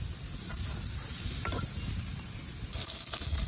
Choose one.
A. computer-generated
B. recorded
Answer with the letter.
B